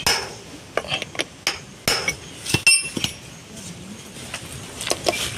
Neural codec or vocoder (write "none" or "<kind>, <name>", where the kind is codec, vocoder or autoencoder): none